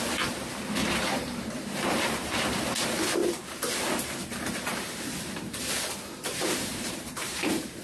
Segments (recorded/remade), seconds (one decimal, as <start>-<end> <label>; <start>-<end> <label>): 0.0-0.8 recorded; 0.8-2.5 remade; 2.5-3.2 recorded; 3.2-5.6 remade; 5.6-6.7 recorded; 6.7-7.8 remade